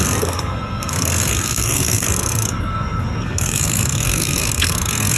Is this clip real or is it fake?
fake